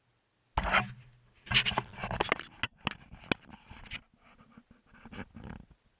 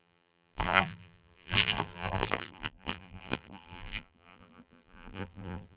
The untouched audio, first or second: first